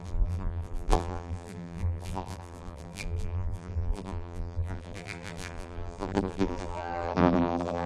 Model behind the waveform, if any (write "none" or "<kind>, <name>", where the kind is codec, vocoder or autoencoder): vocoder, BigVGAN v2